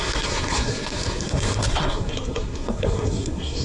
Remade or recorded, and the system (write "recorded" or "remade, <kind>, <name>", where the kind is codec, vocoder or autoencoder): remade, codec, SNAC